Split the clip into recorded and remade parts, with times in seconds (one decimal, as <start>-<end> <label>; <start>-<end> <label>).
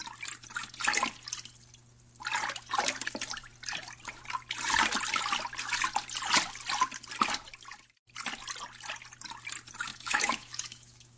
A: 0.0-9.9 recorded; 9.9-11.2 remade